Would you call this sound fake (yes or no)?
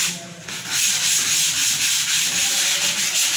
no